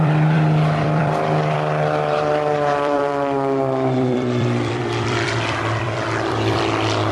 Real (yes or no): no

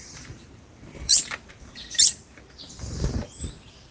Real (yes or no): no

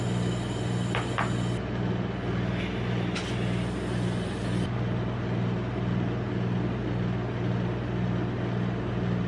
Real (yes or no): yes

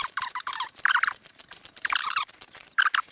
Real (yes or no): no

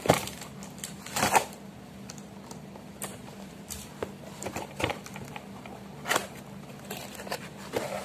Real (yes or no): no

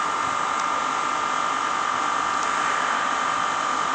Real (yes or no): yes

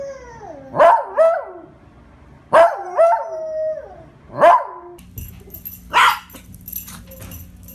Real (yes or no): yes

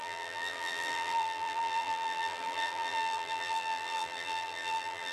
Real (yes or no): no